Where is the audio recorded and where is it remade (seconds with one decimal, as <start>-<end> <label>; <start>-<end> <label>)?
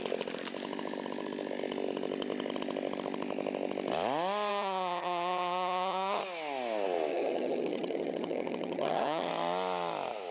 0.0-4.5 recorded; 4.5-6.2 remade; 6.2-7.1 recorded; 7.1-9.3 remade; 9.3-10.3 recorded